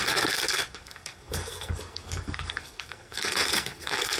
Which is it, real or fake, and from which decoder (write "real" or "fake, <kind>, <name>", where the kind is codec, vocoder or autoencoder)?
fake, codec, SNAC